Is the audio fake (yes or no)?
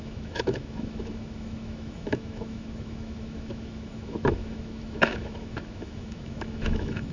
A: yes